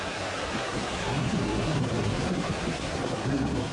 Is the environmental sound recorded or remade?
remade